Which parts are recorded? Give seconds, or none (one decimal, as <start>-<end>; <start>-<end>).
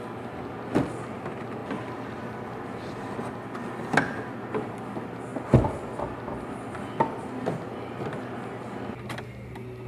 0.0-9.9